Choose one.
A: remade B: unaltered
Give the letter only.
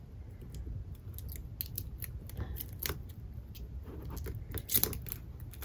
B